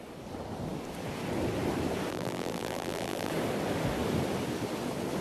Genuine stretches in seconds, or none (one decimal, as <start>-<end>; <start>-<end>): 0.0-2.1; 3.3-5.2